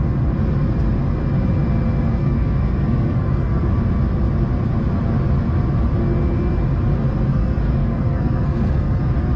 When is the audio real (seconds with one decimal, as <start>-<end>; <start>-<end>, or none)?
0.0-2.2; 3.7-7.3; 9.0-9.4